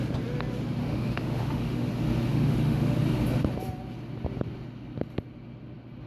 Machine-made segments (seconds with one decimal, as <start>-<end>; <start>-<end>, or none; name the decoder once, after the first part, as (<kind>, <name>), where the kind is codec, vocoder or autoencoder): 0.8-1.9 (autoencoder, DAC-VAE); 2.3-3.0